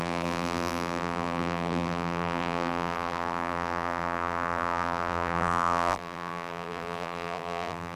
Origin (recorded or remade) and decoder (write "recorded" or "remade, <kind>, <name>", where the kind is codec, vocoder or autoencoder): remade, vocoder, BigVGAN v2